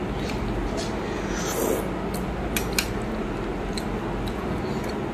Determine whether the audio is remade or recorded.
recorded